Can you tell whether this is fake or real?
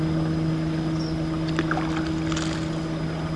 real